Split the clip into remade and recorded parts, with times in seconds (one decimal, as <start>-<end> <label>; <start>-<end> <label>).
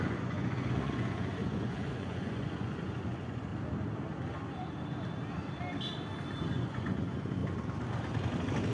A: 0.0-3.5 remade; 3.5-6.5 recorded; 6.5-7.4 remade; 7.4-8.7 recorded